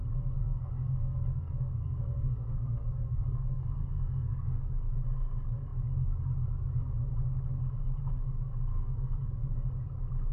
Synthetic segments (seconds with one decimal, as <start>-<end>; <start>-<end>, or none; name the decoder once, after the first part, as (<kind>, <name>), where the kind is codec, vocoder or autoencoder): 0.4-4.7 (codec, SNAC); 8.7-9.5